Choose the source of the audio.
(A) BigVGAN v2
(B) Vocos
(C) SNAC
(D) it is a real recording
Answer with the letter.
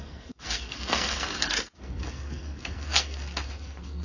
C